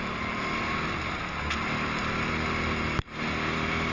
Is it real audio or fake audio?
real